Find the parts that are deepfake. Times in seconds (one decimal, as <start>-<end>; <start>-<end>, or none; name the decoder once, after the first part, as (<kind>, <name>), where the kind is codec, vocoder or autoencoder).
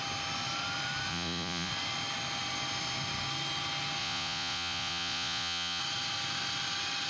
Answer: 1.1-1.7 (vocoder, Vocos); 4.0-5.8